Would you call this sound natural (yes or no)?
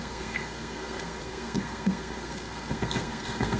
no